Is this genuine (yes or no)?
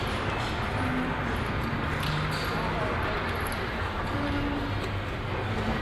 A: yes